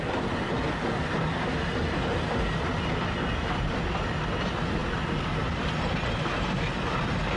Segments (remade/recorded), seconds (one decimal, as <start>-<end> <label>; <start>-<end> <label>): 0.0-7.4 recorded